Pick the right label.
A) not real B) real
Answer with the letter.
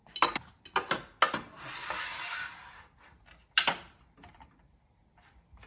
B